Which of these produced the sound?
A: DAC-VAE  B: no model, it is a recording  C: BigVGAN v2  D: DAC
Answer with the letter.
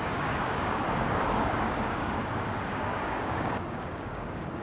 D